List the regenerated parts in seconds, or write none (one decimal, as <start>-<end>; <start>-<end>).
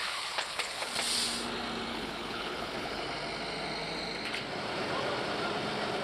0.0-0.9; 1.9-3.0